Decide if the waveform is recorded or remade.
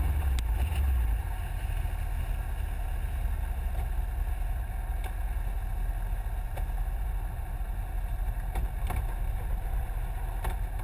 recorded